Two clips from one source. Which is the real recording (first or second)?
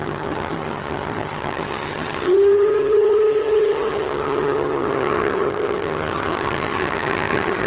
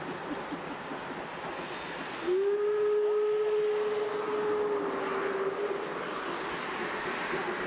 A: second